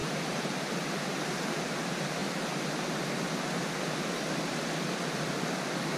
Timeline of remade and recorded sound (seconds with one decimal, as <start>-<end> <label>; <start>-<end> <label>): 0.0-0.7 remade; 0.7-2.2 recorded; 2.2-2.8 remade; 2.8-6.0 recorded